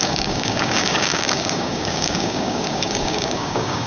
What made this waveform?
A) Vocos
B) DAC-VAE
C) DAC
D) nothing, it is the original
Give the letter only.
C